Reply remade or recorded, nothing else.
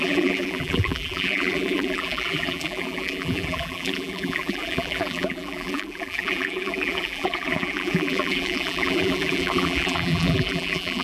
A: remade